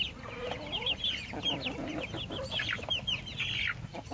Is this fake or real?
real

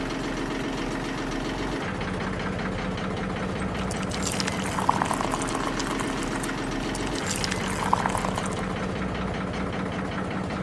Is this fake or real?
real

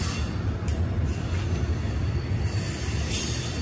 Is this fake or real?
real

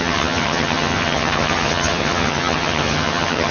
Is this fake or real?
fake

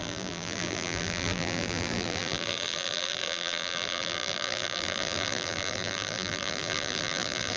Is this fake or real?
fake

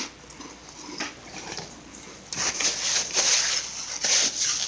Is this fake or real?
real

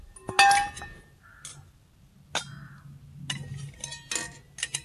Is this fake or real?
real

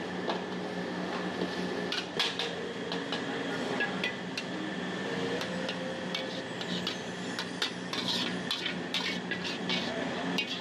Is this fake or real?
real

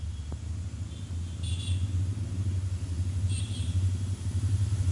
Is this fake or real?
real